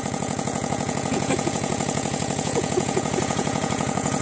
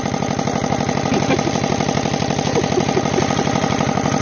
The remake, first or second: first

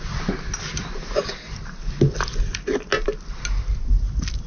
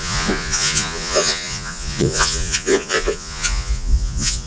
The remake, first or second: second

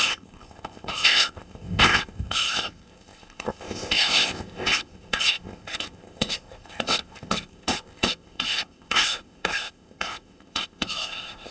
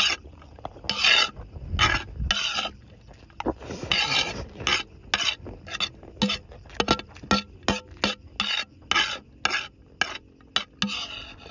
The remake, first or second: first